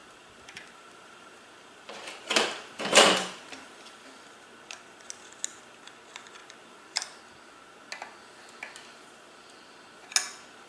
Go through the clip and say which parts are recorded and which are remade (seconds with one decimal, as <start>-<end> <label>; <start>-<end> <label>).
0.0-3.9 remade; 3.9-6.4 recorded; 6.4-7.2 remade; 7.2-10.7 recorded